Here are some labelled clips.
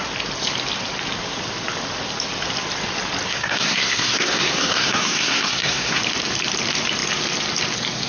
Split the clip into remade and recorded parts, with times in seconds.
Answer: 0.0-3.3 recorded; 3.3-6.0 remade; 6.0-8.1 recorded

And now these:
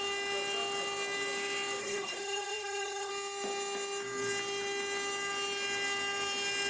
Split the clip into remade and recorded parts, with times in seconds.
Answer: 0.0-1.8 recorded; 1.8-3.1 remade; 3.1-6.7 recorded